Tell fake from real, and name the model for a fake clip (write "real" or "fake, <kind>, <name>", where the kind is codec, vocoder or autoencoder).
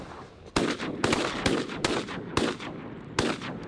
real